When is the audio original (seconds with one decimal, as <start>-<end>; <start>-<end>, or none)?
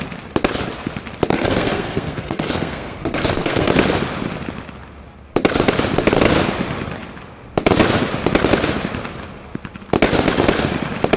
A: 0.0-1.3; 3.7-11.2